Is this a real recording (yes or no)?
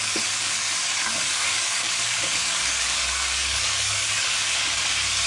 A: no